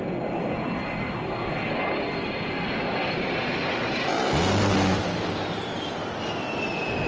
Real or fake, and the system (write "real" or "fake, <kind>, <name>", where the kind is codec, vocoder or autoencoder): real